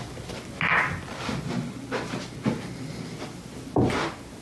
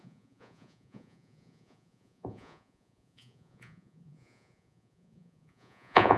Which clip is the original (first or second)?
first